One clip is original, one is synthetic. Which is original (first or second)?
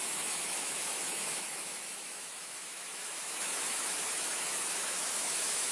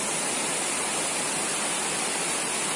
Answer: second